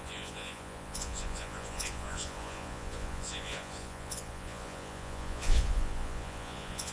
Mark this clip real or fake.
fake